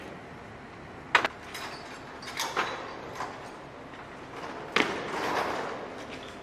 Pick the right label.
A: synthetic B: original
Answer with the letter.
B